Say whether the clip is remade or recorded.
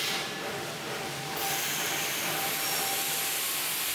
recorded